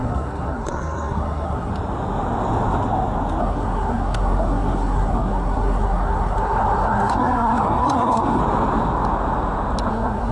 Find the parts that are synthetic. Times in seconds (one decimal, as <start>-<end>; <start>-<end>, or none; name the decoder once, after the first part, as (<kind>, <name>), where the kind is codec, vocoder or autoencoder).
0.0-1.7 (codec, SNAC); 3.4-8.4; 9.9-10.3